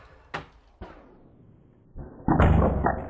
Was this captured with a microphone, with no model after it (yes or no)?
yes